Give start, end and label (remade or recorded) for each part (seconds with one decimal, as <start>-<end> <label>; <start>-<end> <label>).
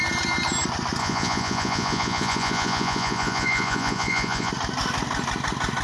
0.0-1.0 recorded; 1.0-4.5 remade; 4.5-5.8 recorded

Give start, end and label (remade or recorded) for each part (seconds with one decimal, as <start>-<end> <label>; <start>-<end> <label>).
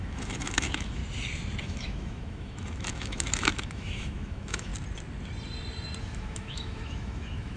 0.0-1.0 remade; 1.0-1.6 recorded; 1.6-4.7 remade; 4.7-6.0 recorded; 6.0-7.6 remade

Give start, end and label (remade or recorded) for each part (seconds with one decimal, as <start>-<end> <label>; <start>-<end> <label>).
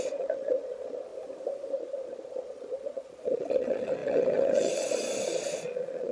0.0-1.1 remade; 1.1-1.7 recorded; 1.7-6.1 remade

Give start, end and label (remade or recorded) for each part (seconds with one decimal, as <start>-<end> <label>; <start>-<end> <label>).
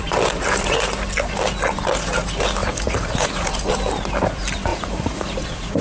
0.0-2.6 recorded; 2.6-3.5 remade; 3.5-4.7 recorded; 4.7-5.8 remade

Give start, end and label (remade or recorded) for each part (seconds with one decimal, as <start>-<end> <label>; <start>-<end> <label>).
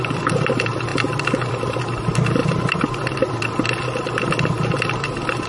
0.0-5.5 recorded